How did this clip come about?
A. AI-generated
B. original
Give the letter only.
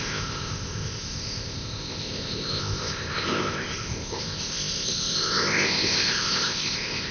A